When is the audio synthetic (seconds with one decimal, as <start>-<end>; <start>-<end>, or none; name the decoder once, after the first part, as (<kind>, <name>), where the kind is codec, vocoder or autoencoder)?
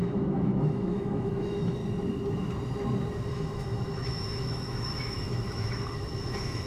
0.0-1.8 (autoencoder, DAC-VAE); 3.3-6.7